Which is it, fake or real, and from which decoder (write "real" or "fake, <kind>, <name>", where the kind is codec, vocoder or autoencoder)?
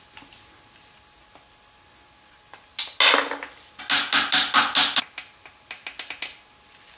real